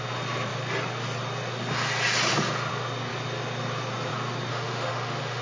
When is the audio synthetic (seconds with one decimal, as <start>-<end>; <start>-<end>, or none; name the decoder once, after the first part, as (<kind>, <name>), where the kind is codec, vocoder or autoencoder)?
4.5-5.4 (autoencoder, DAC-VAE)